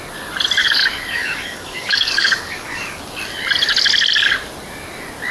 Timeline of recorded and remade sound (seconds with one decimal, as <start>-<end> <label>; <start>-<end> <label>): 0.0-0.6 recorded; 0.6-3.0 remade; 3.0-5.3 recorded